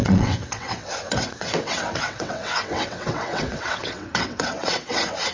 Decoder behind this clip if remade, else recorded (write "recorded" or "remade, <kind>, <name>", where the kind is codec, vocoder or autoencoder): remade, vocoder, WaveNeXt